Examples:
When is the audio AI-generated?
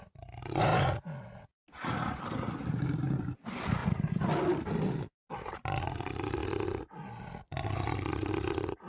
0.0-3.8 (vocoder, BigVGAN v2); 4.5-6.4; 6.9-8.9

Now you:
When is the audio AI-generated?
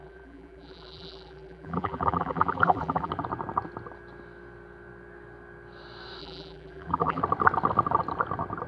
0.0-3.1 (vocoder, BigVGAN v2); 6.2-7.2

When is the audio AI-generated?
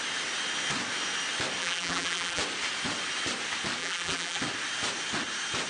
1.6-2.4 (vocoder, BigVGAN v2); 3.8-4.4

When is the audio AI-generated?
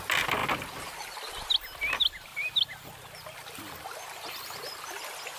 2.3-5.4 (vocoder, BigVGAN v2)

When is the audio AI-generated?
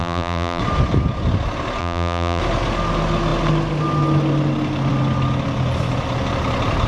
0.0-0.6 (vocoder, BigVGAN v2); 1.8-2.4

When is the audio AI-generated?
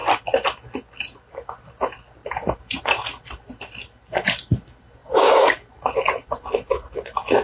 2.2-2.8 (vocoder, BigVGAN v2); 5.0-6.9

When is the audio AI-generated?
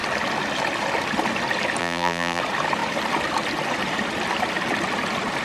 1.8-2.4 (vocoder, BigVGAN v2)